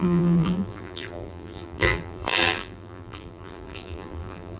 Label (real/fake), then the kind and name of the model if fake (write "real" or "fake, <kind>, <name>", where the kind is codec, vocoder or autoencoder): fake, vocoder, BigVGAN v2